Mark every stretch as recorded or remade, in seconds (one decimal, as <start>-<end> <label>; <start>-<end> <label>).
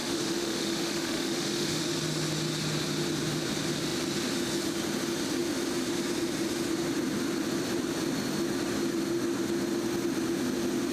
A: 0.0-1.8 remade; 1.8-10.9 recorded